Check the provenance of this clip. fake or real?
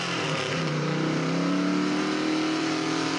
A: fake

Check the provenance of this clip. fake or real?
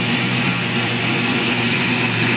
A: fake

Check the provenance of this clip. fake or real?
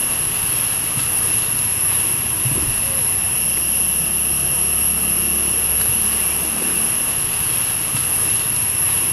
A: real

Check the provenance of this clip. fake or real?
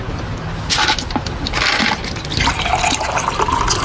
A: real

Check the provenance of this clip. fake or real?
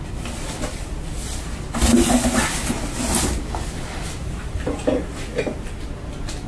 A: real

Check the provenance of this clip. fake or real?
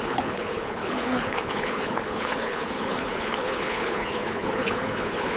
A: fake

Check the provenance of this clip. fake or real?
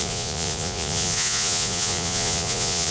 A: fake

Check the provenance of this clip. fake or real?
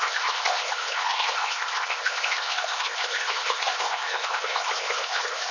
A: fake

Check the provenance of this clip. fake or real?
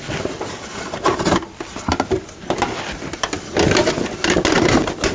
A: real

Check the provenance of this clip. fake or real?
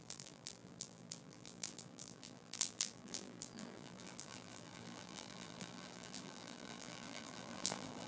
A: fake